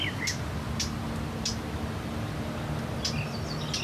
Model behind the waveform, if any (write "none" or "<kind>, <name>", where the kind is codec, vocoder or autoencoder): none